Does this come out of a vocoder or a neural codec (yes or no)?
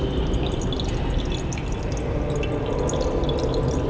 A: no